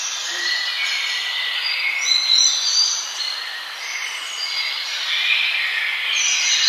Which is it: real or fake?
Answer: real